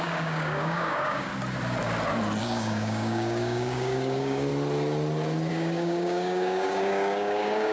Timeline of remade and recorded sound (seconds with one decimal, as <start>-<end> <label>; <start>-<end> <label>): 0.0-1.3 remade; 1.3-2.4 recorded; 2.4-4.5 remade; 4.5-5.5 recorded; 5.5-7.7 remade